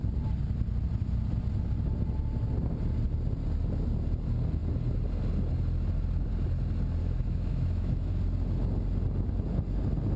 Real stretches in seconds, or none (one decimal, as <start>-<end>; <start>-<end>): 0.0-7.0; 8.1-10.2